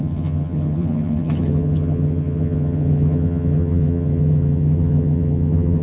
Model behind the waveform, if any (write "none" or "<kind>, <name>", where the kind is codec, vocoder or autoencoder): vocoder, HiFi-GAN